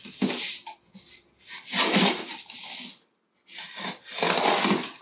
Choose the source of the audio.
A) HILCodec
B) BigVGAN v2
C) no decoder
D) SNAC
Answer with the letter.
C